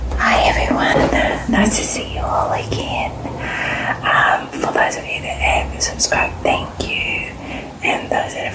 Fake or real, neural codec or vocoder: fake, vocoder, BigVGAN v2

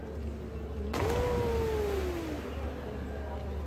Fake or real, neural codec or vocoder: real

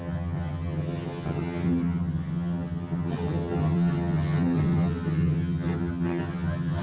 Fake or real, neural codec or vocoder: fake, vocoder, HiFi-GAN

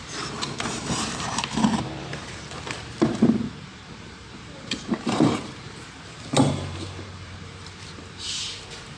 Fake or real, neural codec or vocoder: fake, vocoder, BigVGAN v2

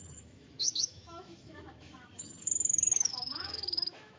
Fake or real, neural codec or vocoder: fake, autoencoder, DAC-VAE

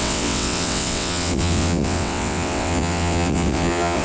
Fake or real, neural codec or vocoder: fake, vocoder, WaveNeXt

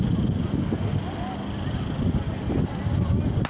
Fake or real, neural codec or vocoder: real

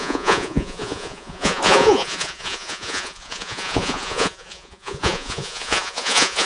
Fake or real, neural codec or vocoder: fake, vocoder, Vocos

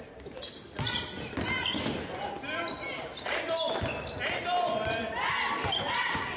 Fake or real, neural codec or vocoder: real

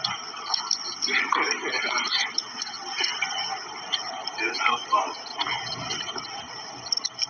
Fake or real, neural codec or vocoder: real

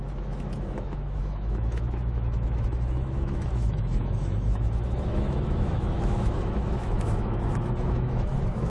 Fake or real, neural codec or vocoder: fake, autoencoder, DAC-VAE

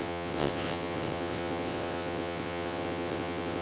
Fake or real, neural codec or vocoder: fake, vocoder, WaveNeXt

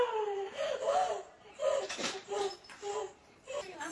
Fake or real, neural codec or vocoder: fake, vocoder, BigVGAN v2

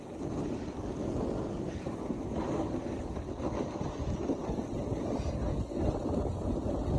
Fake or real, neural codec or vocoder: real